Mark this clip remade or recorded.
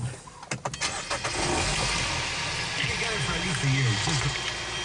recorded